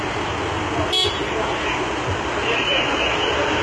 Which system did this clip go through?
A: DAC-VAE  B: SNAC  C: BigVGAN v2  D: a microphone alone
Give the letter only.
D